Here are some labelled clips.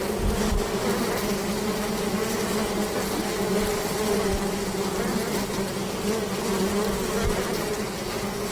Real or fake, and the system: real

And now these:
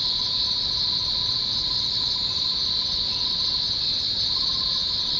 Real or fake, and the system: real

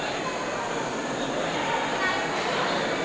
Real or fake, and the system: real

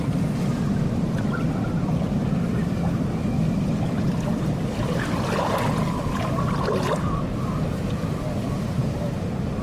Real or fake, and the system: real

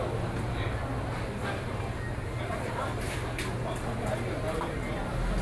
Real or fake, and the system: real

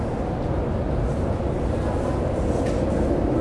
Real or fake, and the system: real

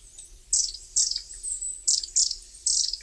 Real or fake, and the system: real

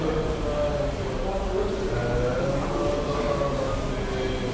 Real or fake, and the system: real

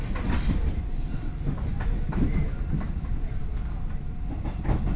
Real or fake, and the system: real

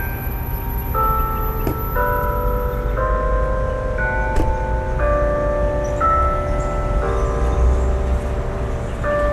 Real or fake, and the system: real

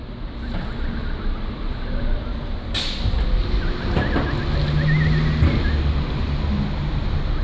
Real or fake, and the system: real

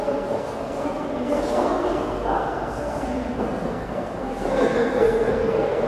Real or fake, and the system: fake, codec, SNAC